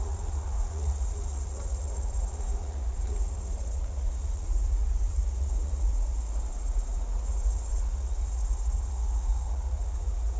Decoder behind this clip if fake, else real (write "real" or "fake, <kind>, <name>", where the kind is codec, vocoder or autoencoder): fake, vocoder, Vocos